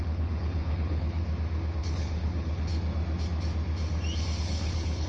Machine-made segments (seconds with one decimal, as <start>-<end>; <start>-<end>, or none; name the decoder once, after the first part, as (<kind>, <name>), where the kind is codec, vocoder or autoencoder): 0.0-1.2 (codec, HILCodec); 1.8-2.7; 4.4-5.1